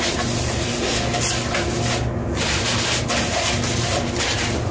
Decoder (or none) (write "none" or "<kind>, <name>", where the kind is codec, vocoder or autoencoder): none